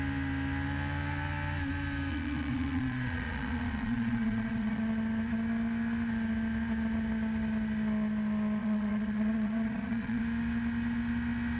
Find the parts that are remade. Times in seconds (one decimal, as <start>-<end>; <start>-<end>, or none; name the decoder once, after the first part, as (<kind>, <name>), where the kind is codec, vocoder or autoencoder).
2.1-4.8 (vocoder, Vocos); 8.6-10.2